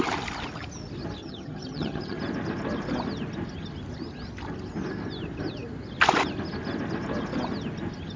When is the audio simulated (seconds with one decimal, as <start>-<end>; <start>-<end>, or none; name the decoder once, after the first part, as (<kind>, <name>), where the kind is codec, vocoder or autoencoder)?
1.2-2.2 (vocoder, HiFi-GAN)

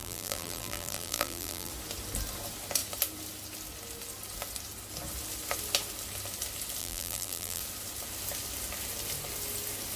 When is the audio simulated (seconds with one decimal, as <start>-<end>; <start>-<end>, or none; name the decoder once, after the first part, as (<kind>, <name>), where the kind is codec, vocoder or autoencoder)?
0.0-1.7 (vocoder, BigVGAN v2); 6.8-7.6

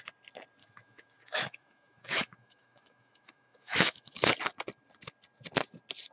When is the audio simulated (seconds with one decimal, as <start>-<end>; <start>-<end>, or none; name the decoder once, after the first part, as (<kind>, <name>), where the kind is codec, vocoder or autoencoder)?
0.6-4.3 (autoencoder, DAC-VAE)